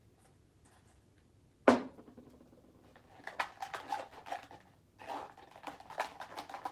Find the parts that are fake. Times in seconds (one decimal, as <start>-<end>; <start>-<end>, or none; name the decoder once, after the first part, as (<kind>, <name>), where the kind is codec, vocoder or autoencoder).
none